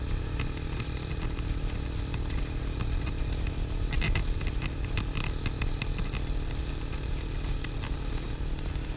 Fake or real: real